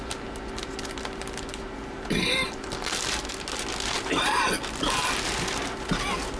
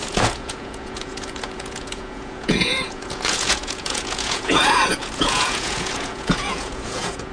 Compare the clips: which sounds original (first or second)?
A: first